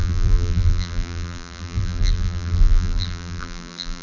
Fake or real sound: fake